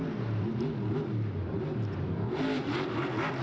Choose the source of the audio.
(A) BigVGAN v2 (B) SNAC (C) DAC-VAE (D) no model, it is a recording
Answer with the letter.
D